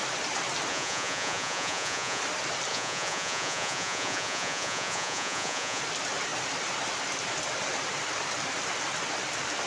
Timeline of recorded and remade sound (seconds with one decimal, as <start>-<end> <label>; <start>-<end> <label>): 0.0-0.7 recorded; 0.7-2.2 remade; 2.2-2.7 recorded; 2.7-5.8 remade; 5.8-9.7 recorded